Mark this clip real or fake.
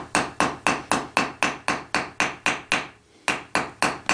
real